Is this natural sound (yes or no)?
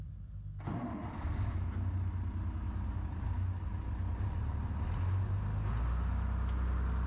yes